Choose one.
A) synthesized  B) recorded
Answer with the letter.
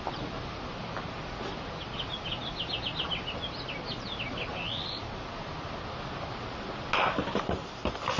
B